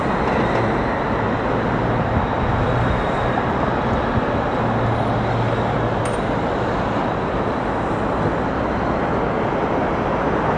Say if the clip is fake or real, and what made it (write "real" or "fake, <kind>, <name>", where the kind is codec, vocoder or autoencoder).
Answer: real